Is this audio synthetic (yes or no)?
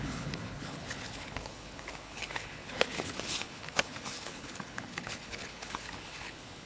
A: yes